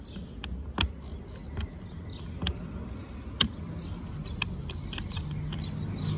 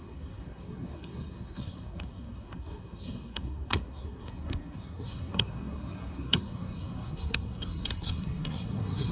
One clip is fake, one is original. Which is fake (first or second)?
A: second